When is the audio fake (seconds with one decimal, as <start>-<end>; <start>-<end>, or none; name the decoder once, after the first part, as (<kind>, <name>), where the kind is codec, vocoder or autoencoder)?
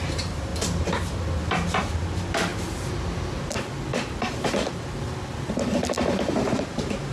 0.0-0.5 (vocoder, BigVGAN v2); 1.5-2.5; 6.6-7.1